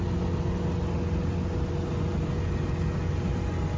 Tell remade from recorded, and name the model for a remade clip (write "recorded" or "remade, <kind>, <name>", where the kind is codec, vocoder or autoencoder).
recorded